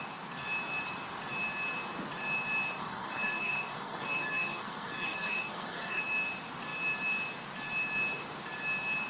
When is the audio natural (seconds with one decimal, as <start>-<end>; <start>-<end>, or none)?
0.0-2.8; 6.0-9.1